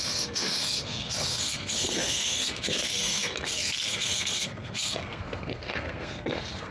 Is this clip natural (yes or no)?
no